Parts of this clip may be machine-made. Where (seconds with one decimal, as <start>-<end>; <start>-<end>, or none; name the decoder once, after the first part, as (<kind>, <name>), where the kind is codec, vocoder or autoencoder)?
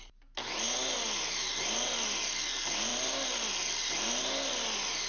none